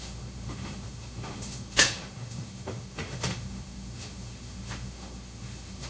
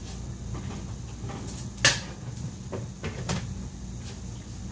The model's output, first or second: first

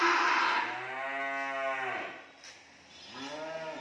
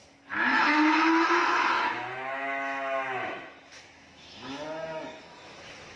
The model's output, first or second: second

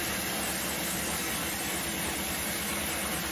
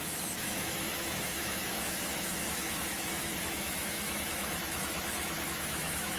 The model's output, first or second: second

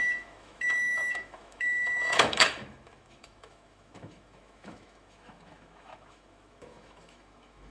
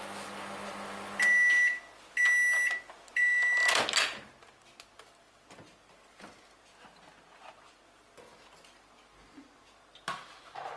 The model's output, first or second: first